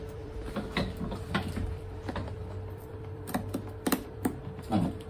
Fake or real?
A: fake